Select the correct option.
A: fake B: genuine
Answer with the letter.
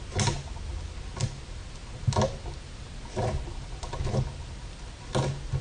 B